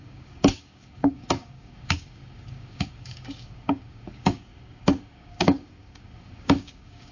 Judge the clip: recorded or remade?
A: remade